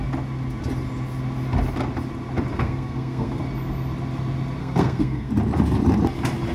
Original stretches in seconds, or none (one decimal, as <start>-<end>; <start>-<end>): 0.0-2.5; 3.4-4.6; 5.3-6.5